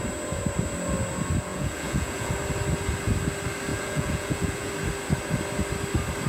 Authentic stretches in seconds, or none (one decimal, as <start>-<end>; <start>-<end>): 0.0-1.5; 2.3-3.7; 4.7-6.3